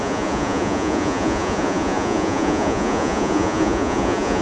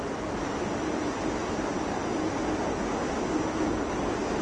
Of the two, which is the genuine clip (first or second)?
second